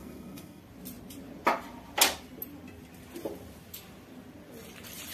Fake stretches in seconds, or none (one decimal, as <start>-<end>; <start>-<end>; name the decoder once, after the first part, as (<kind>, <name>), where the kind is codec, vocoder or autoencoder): 0.0-0.6 (codec, SNAC)